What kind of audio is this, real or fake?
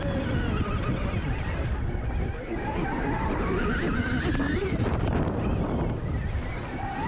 real